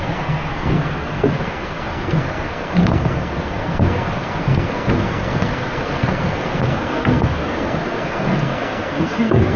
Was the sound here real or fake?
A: fake